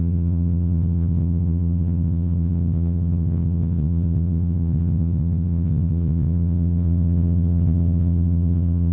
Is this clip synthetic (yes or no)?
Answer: yes